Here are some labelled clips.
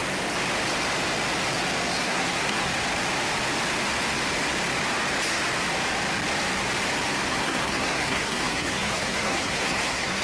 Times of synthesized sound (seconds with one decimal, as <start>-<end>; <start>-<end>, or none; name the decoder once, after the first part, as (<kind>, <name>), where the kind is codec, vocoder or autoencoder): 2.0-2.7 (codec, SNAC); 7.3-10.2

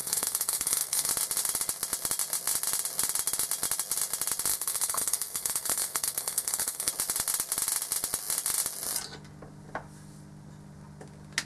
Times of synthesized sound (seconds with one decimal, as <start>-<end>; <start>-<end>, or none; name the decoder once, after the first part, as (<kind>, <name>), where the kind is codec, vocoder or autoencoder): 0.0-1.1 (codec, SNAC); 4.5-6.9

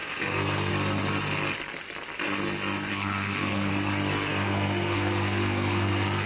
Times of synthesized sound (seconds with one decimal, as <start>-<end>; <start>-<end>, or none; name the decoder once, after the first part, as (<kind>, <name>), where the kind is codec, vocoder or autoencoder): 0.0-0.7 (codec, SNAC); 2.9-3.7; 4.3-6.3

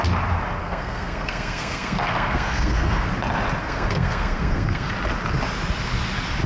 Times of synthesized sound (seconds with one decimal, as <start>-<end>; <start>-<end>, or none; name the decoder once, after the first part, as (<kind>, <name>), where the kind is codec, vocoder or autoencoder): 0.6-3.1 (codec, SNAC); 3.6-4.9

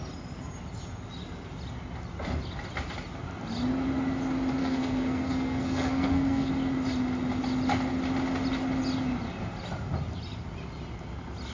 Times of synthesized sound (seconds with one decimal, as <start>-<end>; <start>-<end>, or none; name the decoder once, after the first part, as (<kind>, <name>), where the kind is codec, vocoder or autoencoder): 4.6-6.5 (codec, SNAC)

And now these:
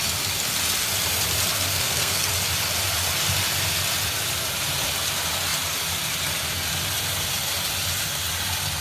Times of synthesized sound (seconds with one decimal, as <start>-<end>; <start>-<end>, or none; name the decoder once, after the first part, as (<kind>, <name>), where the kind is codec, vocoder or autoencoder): 1.7-2.3 (codec, SNAC)

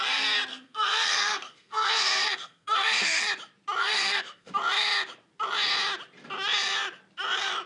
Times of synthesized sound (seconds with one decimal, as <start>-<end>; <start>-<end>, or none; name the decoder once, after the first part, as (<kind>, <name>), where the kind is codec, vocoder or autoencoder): 0.5-3.2 (codec, SNAC); 3.8-4.5